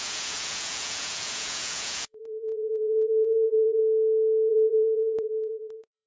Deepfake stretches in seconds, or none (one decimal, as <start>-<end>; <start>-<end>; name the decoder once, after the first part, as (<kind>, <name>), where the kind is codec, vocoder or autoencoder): 0.0-3.8 (vocoder, Vocos); 4.5-6.1